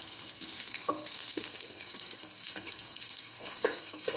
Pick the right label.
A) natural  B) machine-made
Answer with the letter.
B